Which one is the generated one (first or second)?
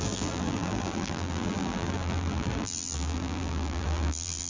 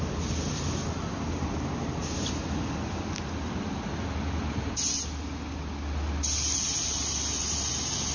first